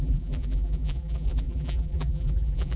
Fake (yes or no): yes